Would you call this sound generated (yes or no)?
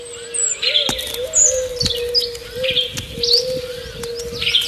no